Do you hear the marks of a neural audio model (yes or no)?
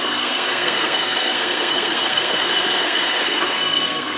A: yes